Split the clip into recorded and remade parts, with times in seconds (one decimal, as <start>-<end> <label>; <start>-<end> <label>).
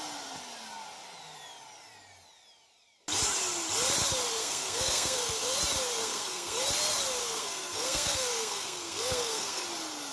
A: 0.0-4.4 recorded; 4.4-5.6 remade; 5.6-6.0 recorded; 6.0-6.6 remade; 6.6-7.2 recorded; 7.2-9.6 remade; 9.6-10.1 recorded